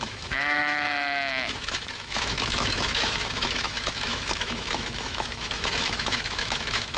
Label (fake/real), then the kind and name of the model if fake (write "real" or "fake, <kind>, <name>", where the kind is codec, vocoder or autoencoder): fake, autoencoder, DAC-VAE